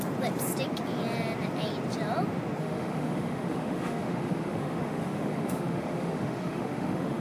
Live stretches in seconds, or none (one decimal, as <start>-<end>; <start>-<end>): 0.0-2.6

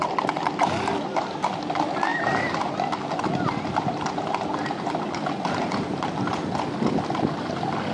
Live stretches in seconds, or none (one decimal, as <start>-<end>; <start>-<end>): 0.0-7.9

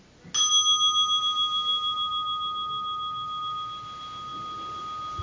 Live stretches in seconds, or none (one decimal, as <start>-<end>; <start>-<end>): 0.0-5.2